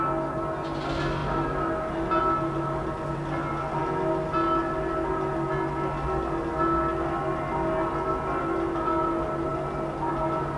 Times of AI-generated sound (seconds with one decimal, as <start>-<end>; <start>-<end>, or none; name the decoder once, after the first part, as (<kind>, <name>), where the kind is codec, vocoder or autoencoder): none